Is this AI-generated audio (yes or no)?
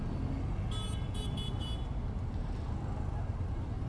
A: no